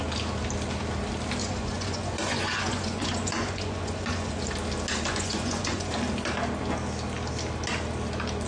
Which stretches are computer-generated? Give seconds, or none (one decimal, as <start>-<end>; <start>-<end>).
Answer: 1.4-4.4; 5.1-5.9